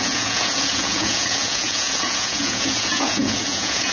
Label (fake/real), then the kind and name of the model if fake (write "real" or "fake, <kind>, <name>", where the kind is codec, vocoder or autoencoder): fake, vocoder, Vocos